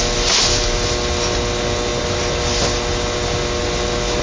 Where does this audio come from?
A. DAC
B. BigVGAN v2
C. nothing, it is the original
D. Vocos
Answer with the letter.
C